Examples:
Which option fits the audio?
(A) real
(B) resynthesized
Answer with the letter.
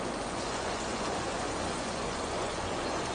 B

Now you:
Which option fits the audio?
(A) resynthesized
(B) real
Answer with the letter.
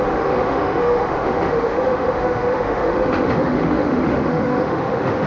A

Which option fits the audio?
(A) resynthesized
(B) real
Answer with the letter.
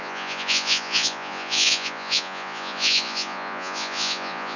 A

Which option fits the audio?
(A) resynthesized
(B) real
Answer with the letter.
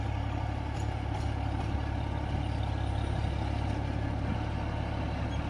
B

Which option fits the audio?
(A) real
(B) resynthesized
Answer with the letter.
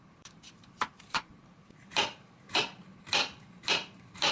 B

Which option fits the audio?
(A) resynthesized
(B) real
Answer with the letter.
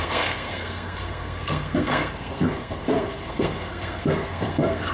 A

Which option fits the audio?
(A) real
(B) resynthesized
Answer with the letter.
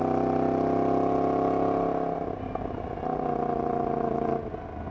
A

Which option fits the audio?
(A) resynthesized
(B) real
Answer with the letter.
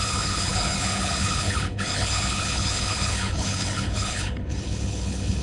A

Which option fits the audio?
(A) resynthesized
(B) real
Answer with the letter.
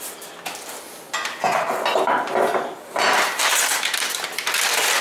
B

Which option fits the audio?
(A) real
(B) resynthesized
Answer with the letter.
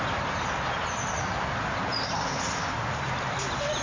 A